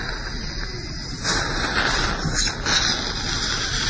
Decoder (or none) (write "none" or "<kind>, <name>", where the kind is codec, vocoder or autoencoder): none